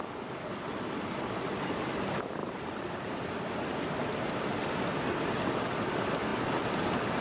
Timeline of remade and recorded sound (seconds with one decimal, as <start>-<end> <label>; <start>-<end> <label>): 0.0-7.2 recorded